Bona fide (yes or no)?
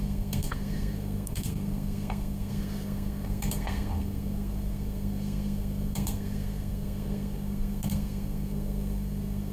no